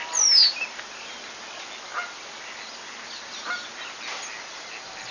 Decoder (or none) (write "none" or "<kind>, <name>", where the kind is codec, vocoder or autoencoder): none